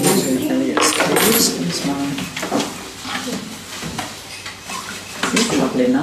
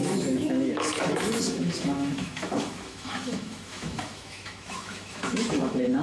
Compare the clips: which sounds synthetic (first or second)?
second